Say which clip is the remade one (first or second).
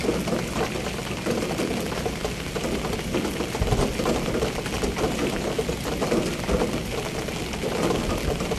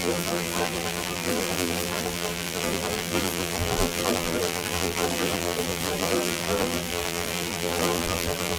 second